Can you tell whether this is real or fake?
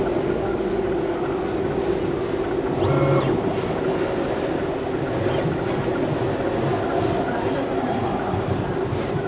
real